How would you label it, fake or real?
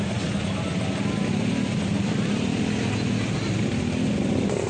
real